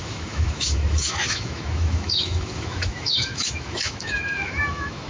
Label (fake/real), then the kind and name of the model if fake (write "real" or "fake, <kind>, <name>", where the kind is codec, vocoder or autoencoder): fake, autoencoder, DAC-VAE